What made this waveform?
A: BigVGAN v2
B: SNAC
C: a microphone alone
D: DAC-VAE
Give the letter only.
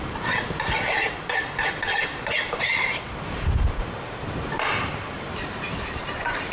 A